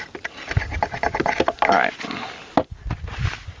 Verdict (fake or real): real